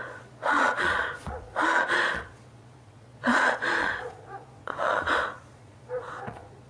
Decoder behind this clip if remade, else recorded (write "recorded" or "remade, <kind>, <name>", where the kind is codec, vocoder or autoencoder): remade, vocoder, Vocos